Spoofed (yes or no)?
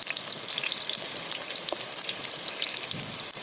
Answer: no